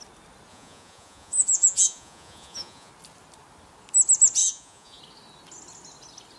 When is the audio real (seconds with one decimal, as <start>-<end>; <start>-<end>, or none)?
0.0-0.5; 2.9-4.4; 5.0-6.4